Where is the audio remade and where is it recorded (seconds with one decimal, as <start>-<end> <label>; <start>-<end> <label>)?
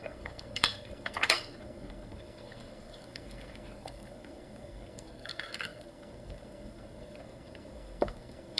0.0-8.6 remade